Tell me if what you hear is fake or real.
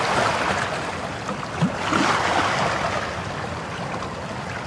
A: real